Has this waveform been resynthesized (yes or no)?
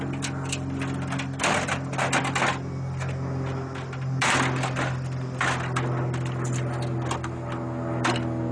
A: no